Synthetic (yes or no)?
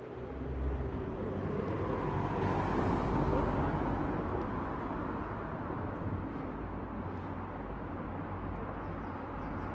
no